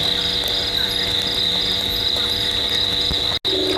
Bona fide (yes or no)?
yes